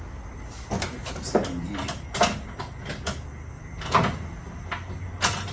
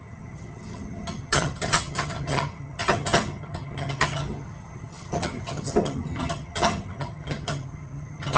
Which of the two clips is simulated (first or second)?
second